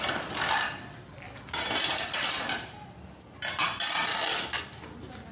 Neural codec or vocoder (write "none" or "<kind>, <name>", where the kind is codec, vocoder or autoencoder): none